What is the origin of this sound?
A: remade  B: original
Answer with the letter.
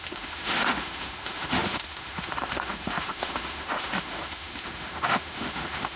A